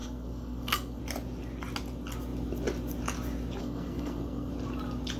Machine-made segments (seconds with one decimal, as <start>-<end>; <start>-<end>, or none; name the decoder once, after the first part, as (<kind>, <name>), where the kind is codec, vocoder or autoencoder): 0.0-1.0 (codec, SNAC); 3.6-4.5